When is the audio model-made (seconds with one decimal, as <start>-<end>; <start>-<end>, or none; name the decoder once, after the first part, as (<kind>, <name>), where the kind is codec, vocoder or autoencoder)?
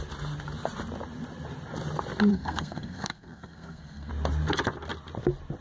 2.3-4.1 (codec, SNAC)